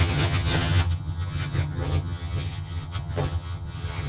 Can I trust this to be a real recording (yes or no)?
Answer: no